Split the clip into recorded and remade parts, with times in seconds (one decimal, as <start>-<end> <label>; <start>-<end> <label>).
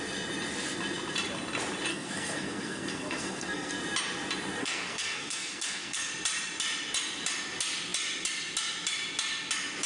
0.0-1.9 recorded; 1.9-3.7 remade; 3.7-4.6 recorded; 4.6-6.1 remade; 6.1-9.9 recorded